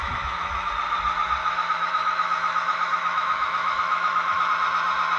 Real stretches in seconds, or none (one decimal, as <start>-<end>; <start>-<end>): 0.7-1.4; 4.5-5.2